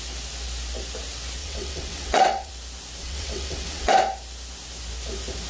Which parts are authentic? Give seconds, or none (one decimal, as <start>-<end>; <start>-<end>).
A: 0.0-1.4; 2.5-3.0; 3.9-5.5